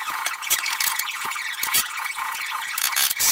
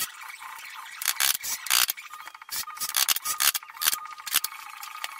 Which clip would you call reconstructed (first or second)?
first